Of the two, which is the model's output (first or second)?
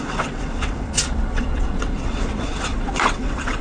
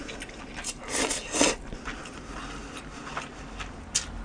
first